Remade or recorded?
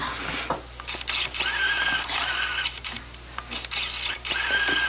recorded